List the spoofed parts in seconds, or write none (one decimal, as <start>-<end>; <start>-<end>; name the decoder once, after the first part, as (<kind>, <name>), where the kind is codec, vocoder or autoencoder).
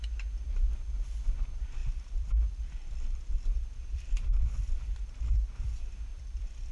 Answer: 1.8-5.6 (vocoder, BigVGAN v2); 6.1-6.7